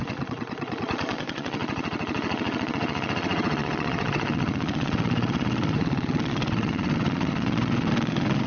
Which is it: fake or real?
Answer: fake